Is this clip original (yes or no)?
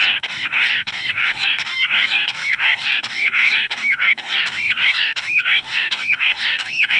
no